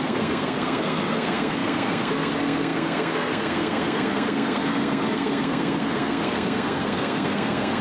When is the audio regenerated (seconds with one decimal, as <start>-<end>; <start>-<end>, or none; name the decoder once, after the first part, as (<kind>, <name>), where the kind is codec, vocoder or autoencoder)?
0.0-7.8 (codec, SNAC)